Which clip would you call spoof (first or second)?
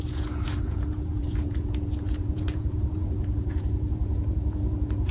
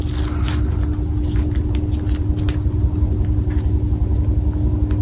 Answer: first